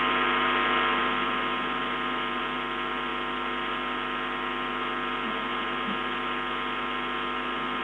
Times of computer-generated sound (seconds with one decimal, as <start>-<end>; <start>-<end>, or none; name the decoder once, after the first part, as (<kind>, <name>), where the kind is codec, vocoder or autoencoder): 1.0-2.4 (vocoder, BigVGAN v2); 3.1-3.7; 5.5-7.8